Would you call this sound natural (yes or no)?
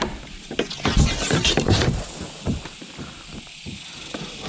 yes